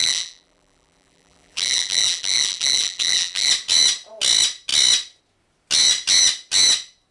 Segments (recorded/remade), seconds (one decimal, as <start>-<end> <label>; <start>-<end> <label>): 0.0-3.5 remade; 3.5-7.1 recorded